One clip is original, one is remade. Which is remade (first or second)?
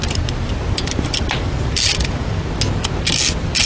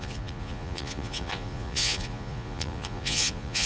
second